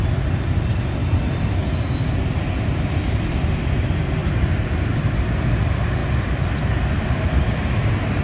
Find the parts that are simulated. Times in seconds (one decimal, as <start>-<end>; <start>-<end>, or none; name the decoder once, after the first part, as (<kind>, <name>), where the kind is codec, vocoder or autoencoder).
none